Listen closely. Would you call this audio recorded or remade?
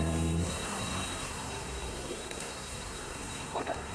remade